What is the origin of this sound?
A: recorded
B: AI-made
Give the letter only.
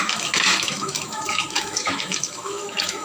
B